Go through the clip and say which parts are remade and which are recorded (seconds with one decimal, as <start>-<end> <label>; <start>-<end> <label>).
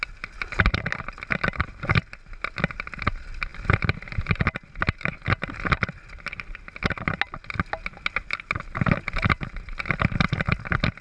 0.0-11.0 recorded